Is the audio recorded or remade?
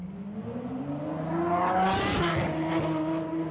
recorded